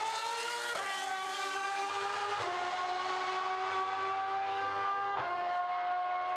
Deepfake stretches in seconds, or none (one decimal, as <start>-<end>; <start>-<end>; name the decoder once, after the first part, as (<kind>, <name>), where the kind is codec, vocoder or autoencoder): 1.1-1.9 (codec, DAC); 4.5-5.6